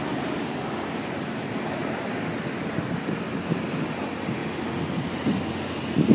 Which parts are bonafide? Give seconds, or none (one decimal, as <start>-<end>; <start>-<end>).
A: 0.0-6.1